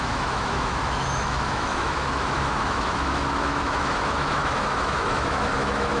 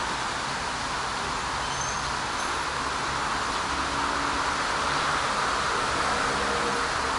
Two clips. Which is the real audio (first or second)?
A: second